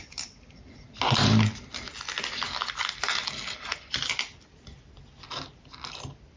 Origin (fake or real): real